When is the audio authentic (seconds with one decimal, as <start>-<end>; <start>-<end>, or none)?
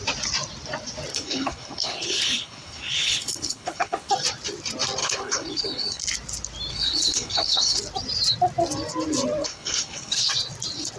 0.0-1.1; 4.1-5.0; 6.0-6.7; 7.8-9.4; 10.3-11.0